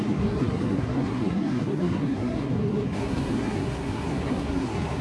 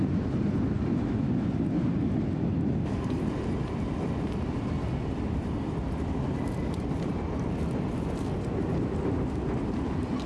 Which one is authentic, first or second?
second